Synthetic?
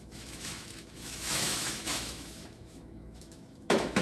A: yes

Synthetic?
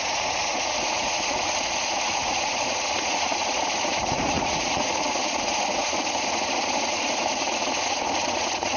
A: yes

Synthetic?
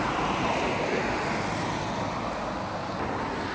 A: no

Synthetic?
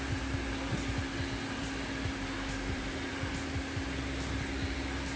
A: yes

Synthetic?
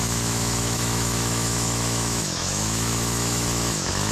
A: yes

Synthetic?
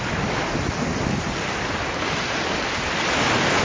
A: no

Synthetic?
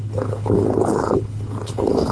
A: yes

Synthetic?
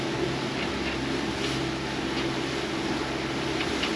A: no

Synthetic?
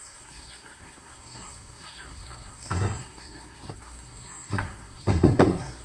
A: yes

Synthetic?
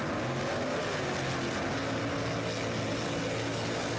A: no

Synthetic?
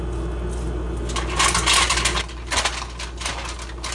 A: no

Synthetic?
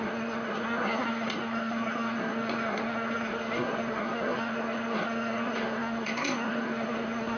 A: yes